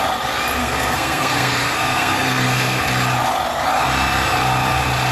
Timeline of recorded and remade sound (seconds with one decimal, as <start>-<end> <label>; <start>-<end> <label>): 0.0-0.6 recorded; 0.6-2.8 remade; 2.8-5.1 recorded